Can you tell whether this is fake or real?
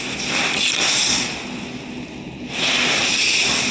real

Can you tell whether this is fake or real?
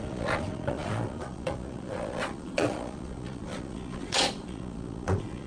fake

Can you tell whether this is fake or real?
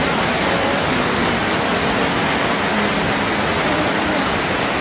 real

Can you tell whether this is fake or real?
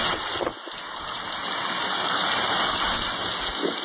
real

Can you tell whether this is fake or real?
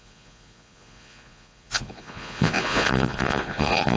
fake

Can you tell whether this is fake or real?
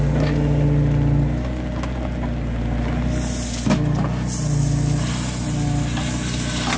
real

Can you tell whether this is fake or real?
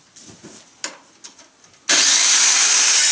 real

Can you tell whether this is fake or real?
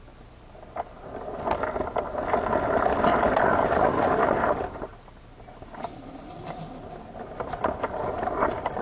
real